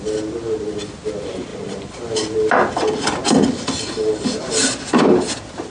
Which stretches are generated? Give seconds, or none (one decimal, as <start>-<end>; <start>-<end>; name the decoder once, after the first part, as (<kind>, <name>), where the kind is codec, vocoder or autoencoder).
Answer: none